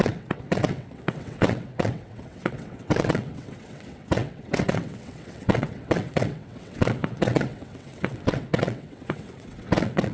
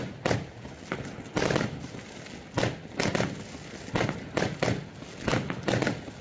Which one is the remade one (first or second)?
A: first